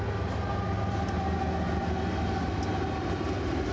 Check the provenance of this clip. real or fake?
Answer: real